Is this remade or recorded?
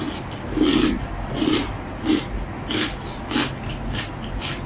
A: recorded